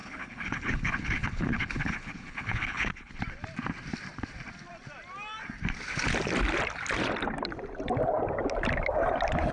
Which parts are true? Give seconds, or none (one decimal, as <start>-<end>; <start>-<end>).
3.2-9.5